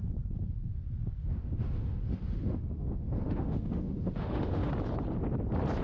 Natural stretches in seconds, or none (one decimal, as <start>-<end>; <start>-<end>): 0.0-1.2; 4.7-5.8